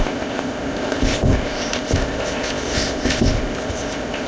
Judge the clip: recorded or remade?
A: remade